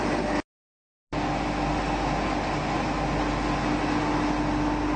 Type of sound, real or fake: real